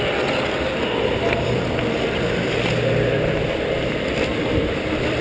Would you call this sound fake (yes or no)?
yes